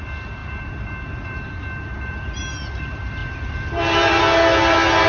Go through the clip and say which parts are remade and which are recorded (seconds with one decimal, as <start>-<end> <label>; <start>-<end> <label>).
0.0-0.4 recorded; 0.4-2.8 remade; 2.8-3.2 recorded; 3.2-4.2 remade; 4.2-5.1 recorded